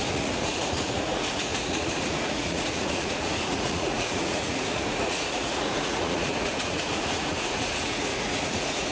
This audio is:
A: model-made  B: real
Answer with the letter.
A